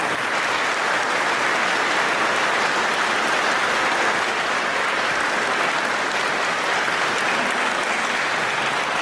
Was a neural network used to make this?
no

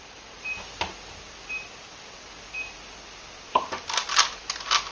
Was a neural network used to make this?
no